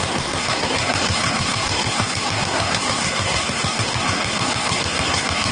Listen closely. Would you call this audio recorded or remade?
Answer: remade